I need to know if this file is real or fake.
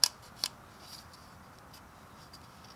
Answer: real